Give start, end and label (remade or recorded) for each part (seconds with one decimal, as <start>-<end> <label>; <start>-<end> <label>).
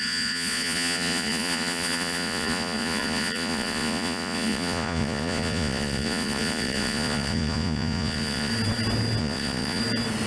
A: 0.0-8.5 remade; 8.5-9.2 recorded; 9.2-9.8 remade; 9.8-10.3 recorded